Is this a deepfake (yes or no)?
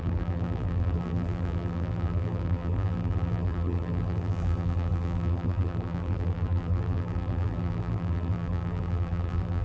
yes